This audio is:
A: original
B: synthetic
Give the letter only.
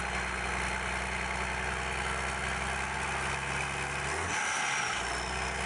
A